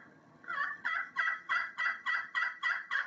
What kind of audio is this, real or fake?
fake